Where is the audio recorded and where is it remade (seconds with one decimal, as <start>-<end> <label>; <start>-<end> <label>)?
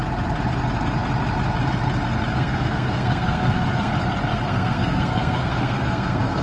0.0-2.3 recorded; 2.3-3.9 remade; 3.9-4.3 recorded; 4.3-6.4 remade